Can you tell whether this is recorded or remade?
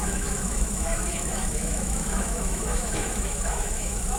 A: remade